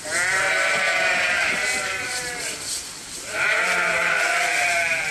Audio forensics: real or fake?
fake